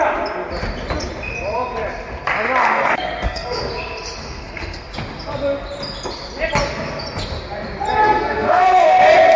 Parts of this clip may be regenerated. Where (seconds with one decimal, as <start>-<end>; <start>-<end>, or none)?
2.6-3.7; 4.2-4.9; 8.0-9.0